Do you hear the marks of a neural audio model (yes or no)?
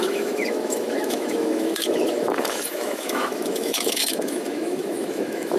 yes